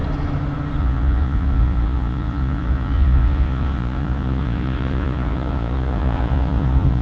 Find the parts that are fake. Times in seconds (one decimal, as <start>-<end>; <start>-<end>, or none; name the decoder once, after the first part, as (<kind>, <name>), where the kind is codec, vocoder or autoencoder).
0.8-7.0 (vocoder, Vocos)